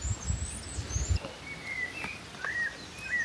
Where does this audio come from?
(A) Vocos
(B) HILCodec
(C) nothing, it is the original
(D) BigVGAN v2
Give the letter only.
C